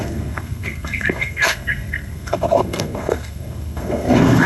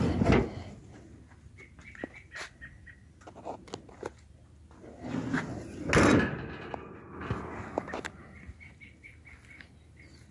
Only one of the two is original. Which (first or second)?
second